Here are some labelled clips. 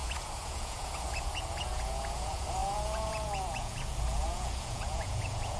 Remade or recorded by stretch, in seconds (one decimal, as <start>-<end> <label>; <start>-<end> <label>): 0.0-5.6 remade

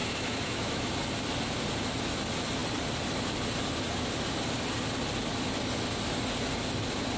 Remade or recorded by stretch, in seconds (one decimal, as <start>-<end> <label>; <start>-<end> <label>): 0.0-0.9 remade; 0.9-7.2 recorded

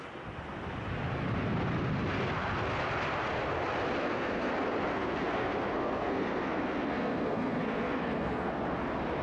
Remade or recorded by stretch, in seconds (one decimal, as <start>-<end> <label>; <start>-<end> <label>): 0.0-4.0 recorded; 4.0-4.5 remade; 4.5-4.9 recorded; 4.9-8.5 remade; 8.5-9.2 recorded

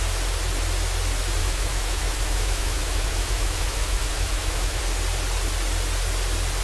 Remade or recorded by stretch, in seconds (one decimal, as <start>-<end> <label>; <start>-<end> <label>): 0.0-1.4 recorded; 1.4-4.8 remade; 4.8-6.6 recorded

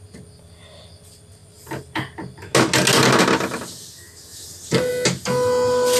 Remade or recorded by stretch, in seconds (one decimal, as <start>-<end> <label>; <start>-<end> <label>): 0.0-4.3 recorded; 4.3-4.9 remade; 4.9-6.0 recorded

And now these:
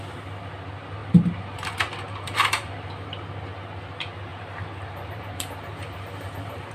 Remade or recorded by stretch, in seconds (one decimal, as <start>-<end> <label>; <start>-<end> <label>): 0.0-1.0 recorded; 1.0-2.9 remade; 2.9-4.3 recorded; 4.3-6.7 remade

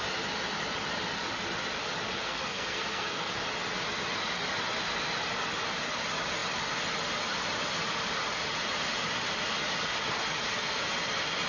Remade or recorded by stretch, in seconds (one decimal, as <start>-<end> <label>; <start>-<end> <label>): 0.0-2.2 recorded; 2.2-3.3 remade; 3.3-11.5 recorded

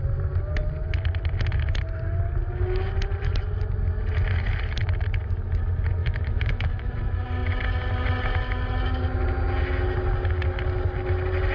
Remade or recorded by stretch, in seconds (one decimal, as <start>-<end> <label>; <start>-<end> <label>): 0.0-6.0 recorded; 6.0-6.9 remade; 6.9-11.5 recorded